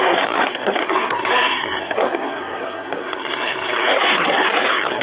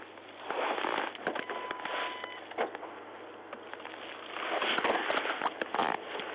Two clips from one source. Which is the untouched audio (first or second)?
second